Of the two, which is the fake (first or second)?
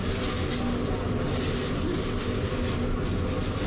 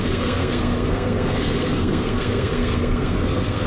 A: second